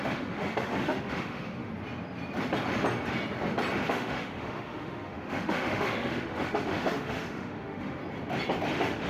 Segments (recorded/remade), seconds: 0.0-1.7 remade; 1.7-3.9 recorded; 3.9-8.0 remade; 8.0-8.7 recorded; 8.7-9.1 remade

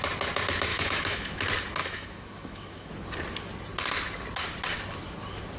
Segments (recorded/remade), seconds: 0.0-0.7 recorded; 0.7-1.4 remade; 1.4-1.8 recorded; 1.8-2.9 remade; 2.9-5.6 recorded

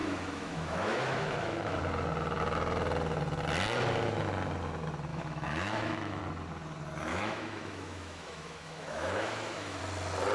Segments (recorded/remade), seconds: 0.0-1.8 remade; 1.8-5.1 recorded; 5.1-6.2 remade; 6.2-7.1 recorded; 7.1-9.8 remade; 9.8-10.3 recorded

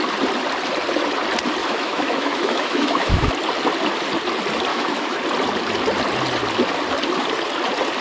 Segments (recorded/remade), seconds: 0.0-1.6 recorded; 1.6-3.3 remade; 3.3-4.7 recorded; 4.7-5.2 remade; 5.2-8.0 recorded

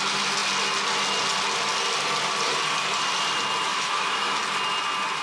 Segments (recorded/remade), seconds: 0.0-3.7 recorded; 3.7-4.4 remade; 4.4-5.2 recorded

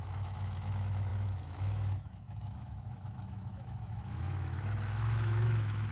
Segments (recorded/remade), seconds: 0.0-5.9 remade